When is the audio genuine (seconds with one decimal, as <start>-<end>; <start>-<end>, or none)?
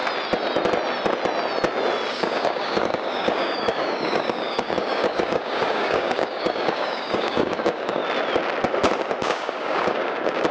0.0-2.1; 8.0-9.2